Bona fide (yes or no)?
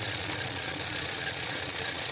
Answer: no